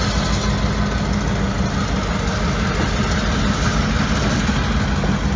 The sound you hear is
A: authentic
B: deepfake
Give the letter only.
A